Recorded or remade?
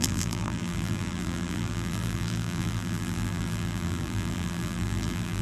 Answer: remade